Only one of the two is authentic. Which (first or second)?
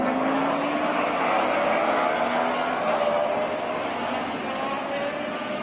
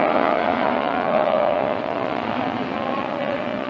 first